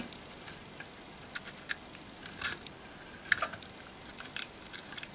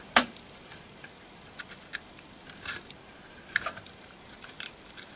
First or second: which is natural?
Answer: first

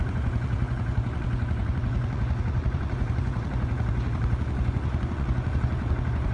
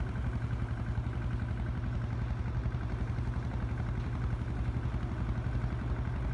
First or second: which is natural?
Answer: second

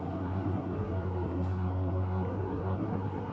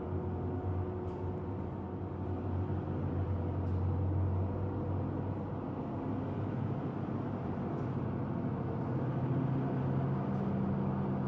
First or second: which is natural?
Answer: second